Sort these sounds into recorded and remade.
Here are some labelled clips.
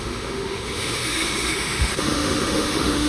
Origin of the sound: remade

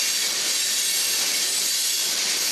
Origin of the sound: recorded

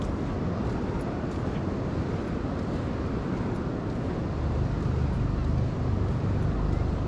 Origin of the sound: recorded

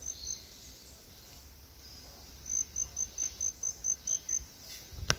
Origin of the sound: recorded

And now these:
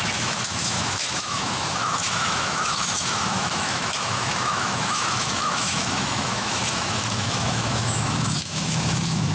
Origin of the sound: remade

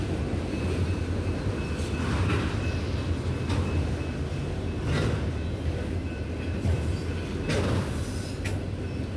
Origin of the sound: recorded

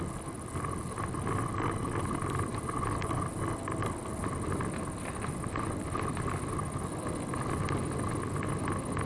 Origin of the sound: recorded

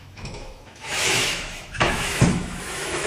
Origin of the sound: remade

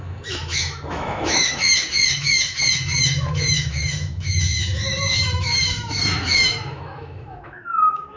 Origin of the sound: remade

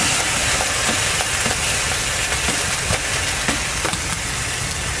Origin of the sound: recorded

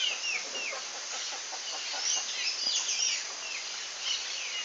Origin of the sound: recorded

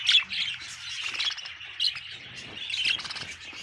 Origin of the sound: recorded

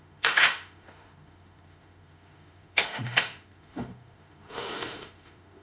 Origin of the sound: remade